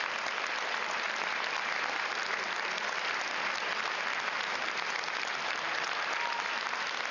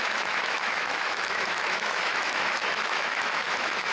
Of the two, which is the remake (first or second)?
second